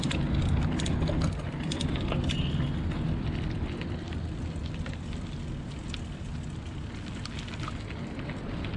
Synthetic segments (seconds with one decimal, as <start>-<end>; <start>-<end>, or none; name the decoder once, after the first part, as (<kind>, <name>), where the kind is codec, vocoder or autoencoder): none